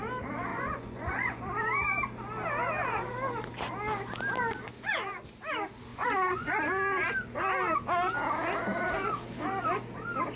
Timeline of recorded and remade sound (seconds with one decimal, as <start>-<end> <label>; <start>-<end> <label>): 0.0-0.5 recorded; 0.5-1.4 remade; 1.4-5.9 recorded; 5.9-6.6 remade; 6.6-10.4 recorded